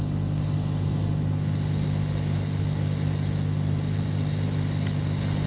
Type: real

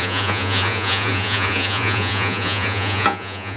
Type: fake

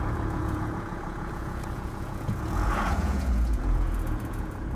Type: fake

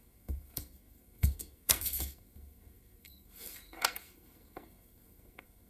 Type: fake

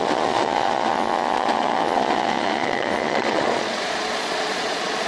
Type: fake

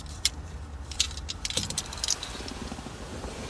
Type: fake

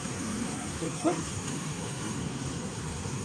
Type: fake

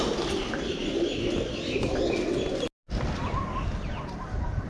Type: real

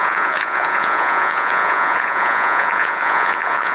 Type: fake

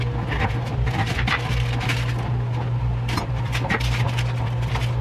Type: real